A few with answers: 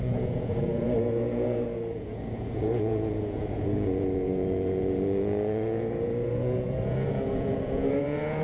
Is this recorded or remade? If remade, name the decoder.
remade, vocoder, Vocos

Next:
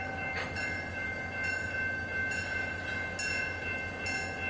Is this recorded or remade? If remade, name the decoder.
recorded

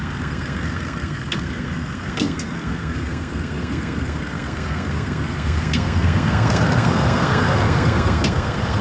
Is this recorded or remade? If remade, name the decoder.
remade, codec, SNAC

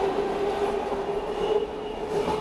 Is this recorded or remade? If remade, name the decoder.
recorded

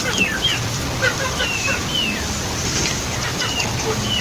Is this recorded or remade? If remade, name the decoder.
recorded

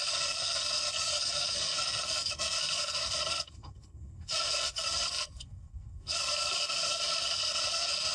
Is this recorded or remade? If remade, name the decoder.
remade, codec, SNAC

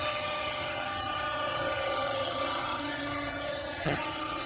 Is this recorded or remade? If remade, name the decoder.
remade, vocoder, HiFi-GAN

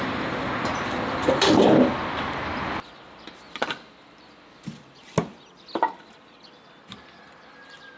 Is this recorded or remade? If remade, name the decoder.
recorded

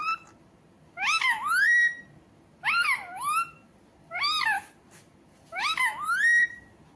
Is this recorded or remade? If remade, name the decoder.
recorded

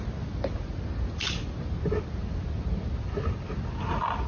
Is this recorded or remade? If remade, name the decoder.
recorded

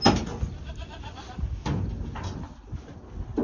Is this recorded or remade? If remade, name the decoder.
recorded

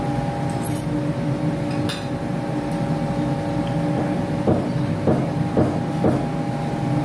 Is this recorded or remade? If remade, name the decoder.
recorded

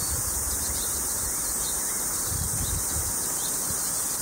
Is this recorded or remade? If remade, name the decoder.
recorded